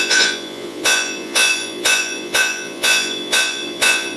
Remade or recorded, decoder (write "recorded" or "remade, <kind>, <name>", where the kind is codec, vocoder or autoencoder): remade, vocoder, Vocos